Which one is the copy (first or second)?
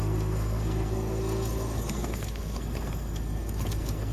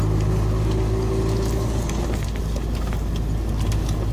first